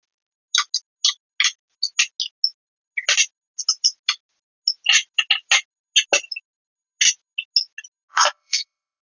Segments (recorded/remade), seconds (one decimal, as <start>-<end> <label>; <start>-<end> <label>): 0.0-8.1 recorded; 8.1-9.0 remade